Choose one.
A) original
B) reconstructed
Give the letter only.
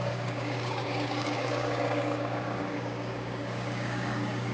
B